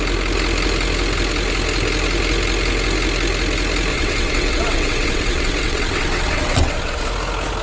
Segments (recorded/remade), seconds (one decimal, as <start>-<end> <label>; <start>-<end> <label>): 0.0-3.9 recorded; 3.9-7.1 remade; 7.1-7.6 recorded